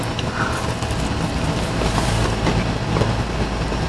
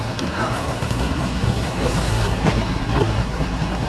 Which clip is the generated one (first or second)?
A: second